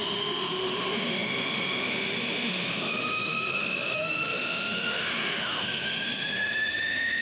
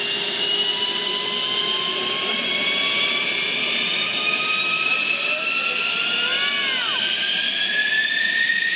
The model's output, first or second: first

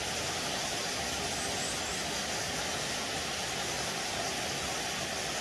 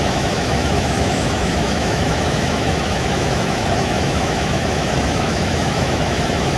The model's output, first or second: second